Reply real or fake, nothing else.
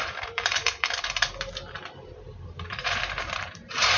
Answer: fake